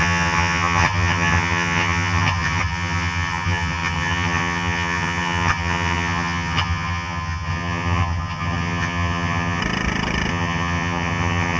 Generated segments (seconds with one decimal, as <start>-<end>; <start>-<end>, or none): 0.0-9.6; 10.3-11.6